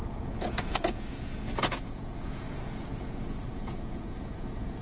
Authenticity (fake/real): fake